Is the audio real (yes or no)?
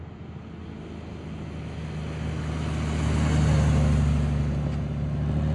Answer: yes